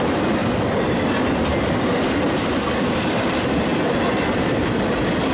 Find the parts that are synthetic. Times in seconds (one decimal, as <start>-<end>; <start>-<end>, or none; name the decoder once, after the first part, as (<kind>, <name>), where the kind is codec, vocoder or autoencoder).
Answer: 0.0-0.4 (vocoder, BigVGAN v2); 2.4-5.3

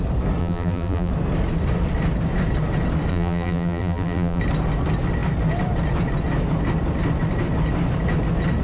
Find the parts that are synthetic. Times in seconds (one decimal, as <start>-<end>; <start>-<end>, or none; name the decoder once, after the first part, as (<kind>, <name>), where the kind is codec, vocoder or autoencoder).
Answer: 0.4-1.1 (vocoder, BigVGAN v2); 3.1-4.4

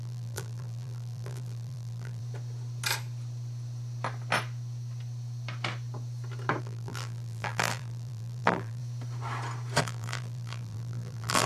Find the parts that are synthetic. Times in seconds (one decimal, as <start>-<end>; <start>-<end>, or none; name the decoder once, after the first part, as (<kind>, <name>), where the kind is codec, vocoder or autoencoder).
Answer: 0.0-2.2 (vocoder, BigVGAN v2); 6.6-8.8; 9.8-11.5

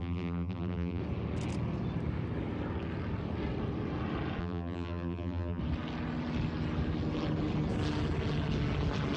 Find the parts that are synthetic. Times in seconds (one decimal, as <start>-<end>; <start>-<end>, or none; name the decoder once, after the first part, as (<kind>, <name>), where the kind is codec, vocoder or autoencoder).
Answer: 0.0-1.0 (vocoder, BigVGAN v2); 4.4-5.6

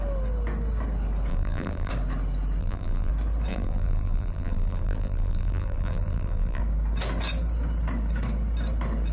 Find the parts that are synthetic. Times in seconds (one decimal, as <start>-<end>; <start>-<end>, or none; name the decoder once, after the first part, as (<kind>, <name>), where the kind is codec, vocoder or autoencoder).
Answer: 1.3-1.9 (vocoder, BigVGAN v2); 2.6-3.1; 3.5-6.6

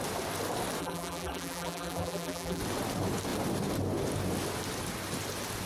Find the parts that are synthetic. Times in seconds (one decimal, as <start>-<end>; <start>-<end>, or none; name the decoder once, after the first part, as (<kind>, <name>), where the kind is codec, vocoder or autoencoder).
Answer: 0.8-2.6 (vocoder, BigVGAN v2)

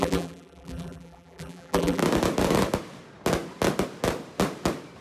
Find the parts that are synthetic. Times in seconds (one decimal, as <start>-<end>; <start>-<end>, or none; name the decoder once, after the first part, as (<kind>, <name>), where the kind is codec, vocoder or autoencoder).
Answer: 0.0-2.0 (vocoder, BigVGAN v2)

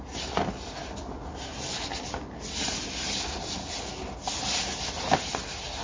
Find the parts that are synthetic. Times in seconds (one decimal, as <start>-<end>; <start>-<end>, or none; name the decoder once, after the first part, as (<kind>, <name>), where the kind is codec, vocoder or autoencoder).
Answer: none